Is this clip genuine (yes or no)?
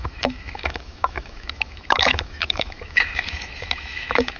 no